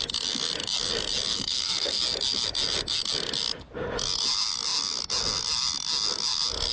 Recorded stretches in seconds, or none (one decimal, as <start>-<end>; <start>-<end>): 0.0-1.3; 2.0-6.7